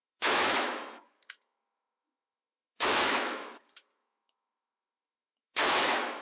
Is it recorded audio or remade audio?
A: remade